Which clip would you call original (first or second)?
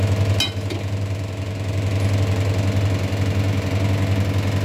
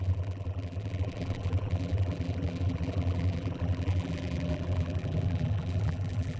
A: first